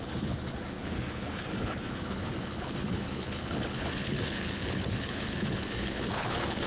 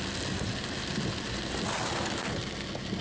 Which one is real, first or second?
second